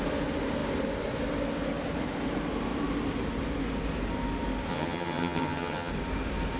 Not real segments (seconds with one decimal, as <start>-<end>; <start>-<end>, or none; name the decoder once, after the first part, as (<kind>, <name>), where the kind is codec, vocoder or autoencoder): 4.7-5.9 (vocoder, HiFi-GAN)